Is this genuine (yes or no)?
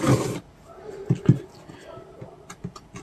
yes